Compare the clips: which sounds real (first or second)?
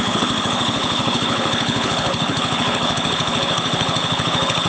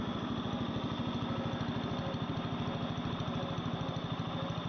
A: second